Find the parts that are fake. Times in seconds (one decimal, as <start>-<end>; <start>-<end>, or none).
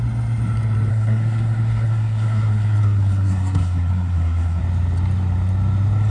0.9-4.6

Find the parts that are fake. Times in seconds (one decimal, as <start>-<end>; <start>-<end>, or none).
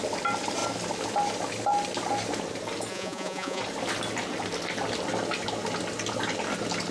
2.9-3.6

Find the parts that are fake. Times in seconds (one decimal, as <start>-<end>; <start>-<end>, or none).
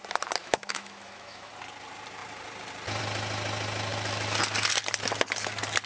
0.4-1.5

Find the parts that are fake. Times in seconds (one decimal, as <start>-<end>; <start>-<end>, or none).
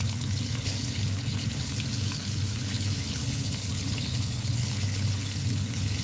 0.0-6.0